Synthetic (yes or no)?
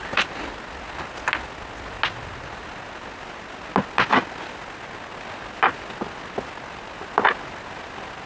no